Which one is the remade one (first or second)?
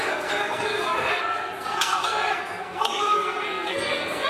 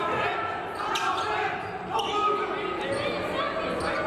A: first